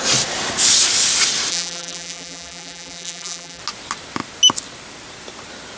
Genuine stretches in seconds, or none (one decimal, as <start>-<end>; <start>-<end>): 0.0-1.5; 3.6-5.8